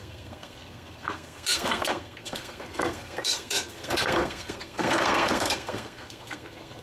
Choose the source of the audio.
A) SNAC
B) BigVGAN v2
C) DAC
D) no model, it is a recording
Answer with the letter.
A